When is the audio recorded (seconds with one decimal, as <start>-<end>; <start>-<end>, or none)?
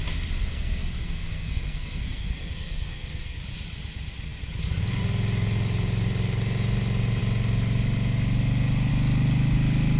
0.0-0.5; 3.4-10.0